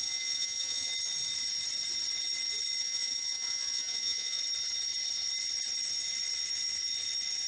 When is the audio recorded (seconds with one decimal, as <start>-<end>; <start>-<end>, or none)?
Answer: 0.9-2.8; 4.4-7.5